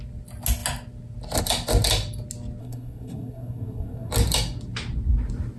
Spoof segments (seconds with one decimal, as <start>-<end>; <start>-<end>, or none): 2.6-4.1